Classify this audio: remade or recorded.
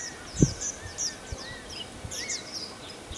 remade